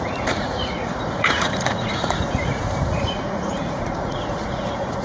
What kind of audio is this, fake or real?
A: fake